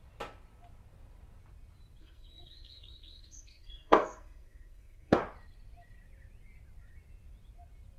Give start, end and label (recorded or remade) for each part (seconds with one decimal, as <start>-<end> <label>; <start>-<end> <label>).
0.0-2.0 recorded; 2.0-5.2 remade; 5.2-8.0 recorded